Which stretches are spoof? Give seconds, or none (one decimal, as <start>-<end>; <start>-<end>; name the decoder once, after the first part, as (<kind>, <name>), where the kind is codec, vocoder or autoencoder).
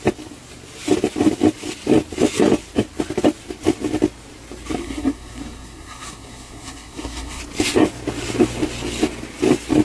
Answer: 4.8-7.4 (codec, SNAC)